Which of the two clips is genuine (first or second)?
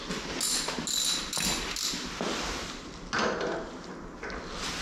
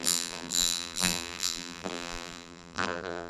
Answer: first